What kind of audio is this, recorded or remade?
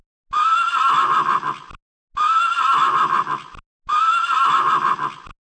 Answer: recorded